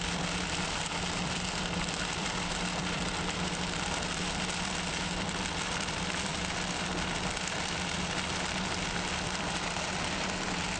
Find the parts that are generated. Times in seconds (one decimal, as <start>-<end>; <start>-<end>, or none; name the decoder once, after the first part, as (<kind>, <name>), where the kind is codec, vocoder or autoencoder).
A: 0.0-6.3 (vocoder, BigVGAN v2); 7.8-10.8